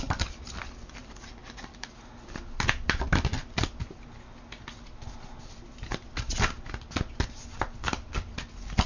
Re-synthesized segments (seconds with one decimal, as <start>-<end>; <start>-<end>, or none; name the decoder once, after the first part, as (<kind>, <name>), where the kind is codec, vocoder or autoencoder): 1.0-3.9 (vocoder, BigVGAN v2)